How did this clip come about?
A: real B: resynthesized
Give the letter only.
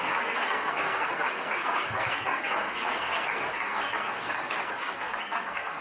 B